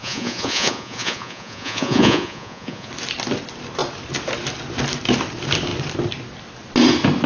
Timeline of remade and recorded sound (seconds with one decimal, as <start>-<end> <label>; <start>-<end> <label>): 0.0-2.9 remade; 2.9-7.3 recorded